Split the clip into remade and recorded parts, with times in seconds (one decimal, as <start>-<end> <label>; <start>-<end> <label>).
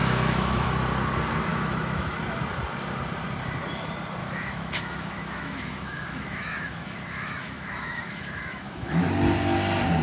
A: 0.0-0.7 remade; 0.7-1.5 recorded; 1.5-2.1 remade; 2.1-4.2 recorded; 4.2-9.0 remade; 9.0-10.0 recorded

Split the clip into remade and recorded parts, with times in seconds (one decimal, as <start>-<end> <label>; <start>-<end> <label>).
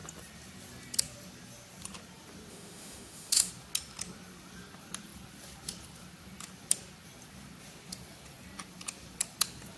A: 0.0-2.5 recorded; 2.5-3.5 remade; 3.5-9.8 recorded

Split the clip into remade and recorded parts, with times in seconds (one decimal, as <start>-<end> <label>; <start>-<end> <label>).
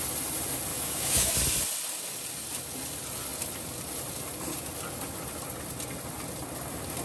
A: 0.0-0.7 recorded; 0.7-1.3 remade; 1.3-7.0 recorded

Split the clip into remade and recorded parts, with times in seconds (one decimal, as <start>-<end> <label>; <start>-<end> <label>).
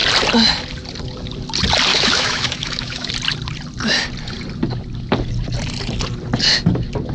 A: 0.0-1.9 recorded; 1.9-3.1 remade; 3.1-7.1 recorded